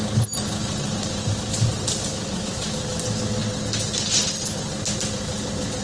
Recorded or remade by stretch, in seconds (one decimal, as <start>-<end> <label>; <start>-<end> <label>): 0.0-0.6 recorded; 0.6-1.3 remade; 1.3-3.4 recorded; 3.4-4.7 remade; 4.7-5.8 recorded